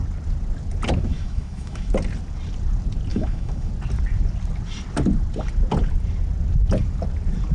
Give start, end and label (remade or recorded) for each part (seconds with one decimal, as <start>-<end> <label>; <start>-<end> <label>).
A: 0.0-1.1 recorded; 1.1-1.9 remade; 1.9-3.1 recorded; 3.1-3.7 remade; 3.7-7.5 recorded